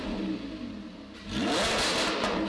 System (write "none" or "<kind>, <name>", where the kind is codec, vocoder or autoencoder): none